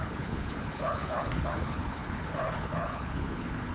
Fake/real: fake